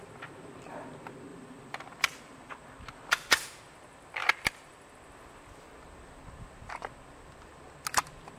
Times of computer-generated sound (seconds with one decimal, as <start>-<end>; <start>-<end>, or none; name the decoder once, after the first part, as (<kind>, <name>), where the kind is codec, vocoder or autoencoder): 1.3-2.5 (vocoder, BigVGAN v2); 4.2-4.9